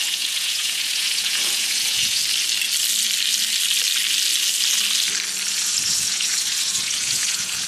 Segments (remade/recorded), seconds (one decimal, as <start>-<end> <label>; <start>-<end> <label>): 0.0-2.2 remade; 2.2-5.5 recorded; 5.5-7.7 remade